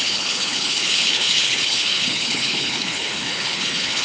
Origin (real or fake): fake